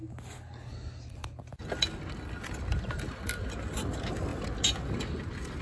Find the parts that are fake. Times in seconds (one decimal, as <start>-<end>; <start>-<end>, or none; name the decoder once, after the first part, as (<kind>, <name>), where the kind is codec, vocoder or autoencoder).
none